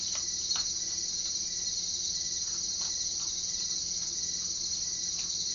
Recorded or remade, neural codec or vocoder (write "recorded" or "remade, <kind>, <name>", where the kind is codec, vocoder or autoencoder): recorded